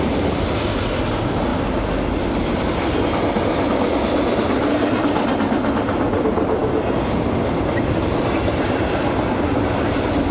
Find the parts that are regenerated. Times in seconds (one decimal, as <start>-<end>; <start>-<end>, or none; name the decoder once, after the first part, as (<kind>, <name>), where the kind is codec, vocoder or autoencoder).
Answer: none